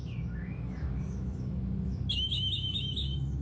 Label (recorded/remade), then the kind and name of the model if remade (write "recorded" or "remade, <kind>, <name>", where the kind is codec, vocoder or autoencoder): remade, autoencoder, DAC-VAE